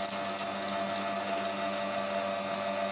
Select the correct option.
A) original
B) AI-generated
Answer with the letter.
A